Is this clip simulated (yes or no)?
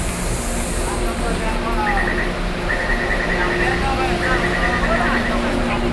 no